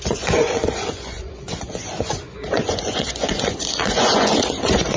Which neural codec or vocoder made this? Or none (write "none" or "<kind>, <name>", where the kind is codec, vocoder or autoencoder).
vocoder, Vocos